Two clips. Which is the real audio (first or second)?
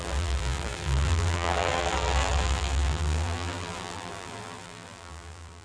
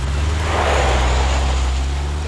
second